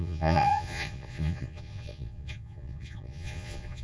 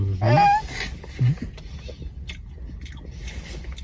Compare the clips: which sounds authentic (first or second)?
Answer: second